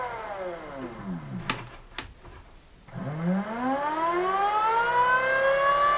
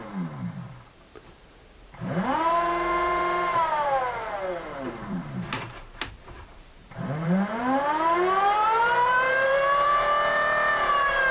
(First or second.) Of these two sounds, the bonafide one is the first